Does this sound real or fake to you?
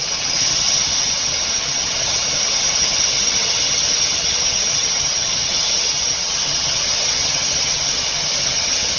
fake